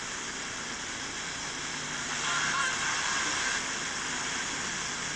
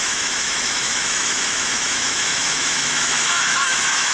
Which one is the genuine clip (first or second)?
first